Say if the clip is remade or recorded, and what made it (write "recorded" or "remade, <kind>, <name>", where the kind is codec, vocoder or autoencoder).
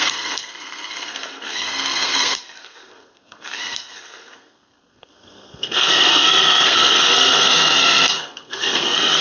remade, codec, SNAC